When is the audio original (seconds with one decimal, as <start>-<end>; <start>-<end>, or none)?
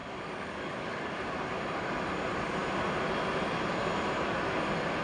1.2-5.0